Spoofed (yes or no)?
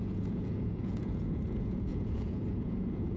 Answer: yes